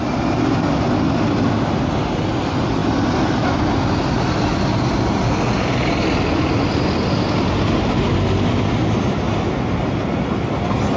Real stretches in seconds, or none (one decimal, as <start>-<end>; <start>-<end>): 0.0-11.0